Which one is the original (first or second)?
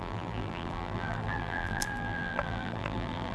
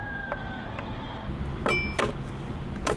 second